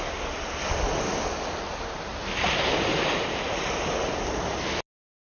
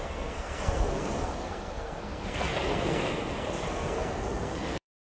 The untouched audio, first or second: first